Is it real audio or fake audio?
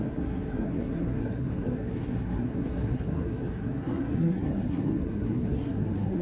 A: fake